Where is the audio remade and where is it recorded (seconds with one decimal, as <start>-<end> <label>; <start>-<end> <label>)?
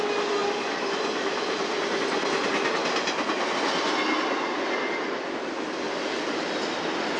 0.0-0.4 recorded; 0.4-2.7 remade; 2.7-7.2 recorded